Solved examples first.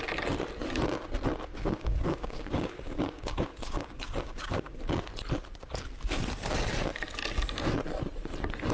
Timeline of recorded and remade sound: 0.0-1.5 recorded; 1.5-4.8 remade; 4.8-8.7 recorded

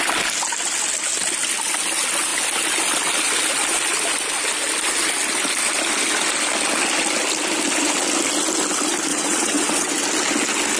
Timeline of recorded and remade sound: 0.0-9.1 recorded; 9.1-9.9 remade; 9.9-10.8 recorded